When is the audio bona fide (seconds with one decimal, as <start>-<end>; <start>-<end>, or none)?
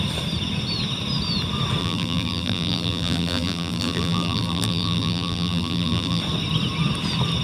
0.0-1.8; 6.2-7.4